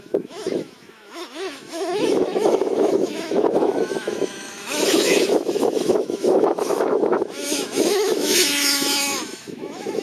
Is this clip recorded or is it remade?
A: remade